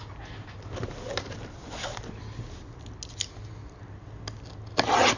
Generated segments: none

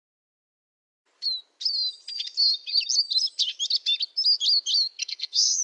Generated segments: 5.0-5.6 (codec, SNAC)